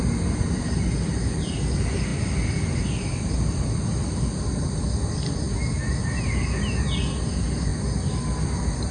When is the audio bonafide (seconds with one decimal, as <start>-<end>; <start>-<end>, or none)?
0.0-8.9